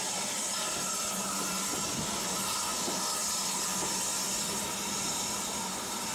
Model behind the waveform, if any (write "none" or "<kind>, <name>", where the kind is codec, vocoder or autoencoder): none